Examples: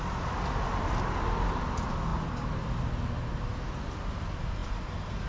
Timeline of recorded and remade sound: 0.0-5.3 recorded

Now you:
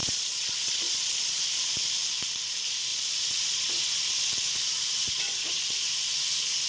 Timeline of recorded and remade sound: 0.0-1.4 remade; 1.4-2.9 recorded; 2.9-5.7 remade; 5.7-6.7 recorded

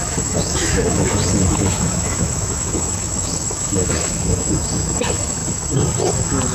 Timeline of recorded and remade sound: 0.0-5.4 remade; 5.4-6.1 recorded; 6.1-6.5 remade

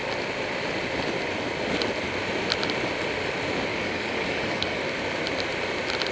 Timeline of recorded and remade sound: 0.0-3.7 recorded; 3.7-4.8 remade; 4.8-6.1 recorded